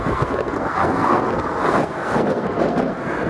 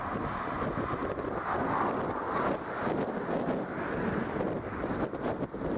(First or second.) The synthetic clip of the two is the first